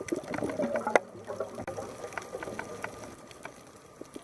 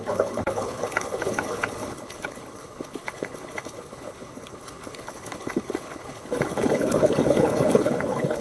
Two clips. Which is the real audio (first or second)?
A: first